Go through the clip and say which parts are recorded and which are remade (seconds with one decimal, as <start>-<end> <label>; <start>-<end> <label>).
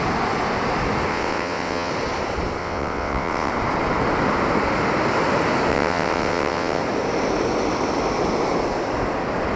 0.0-1.1 recorded; 1.1-1.9 remade; 1.9-2.6 recorded; 2.6-3.5 remade; 3.5-5.7 recorded; 5.7-6.8 remade; 6.8-9.6 recorded